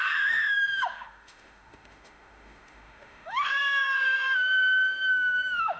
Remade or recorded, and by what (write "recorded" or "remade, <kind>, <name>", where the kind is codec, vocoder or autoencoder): remade, autoencoder, DAC-VAE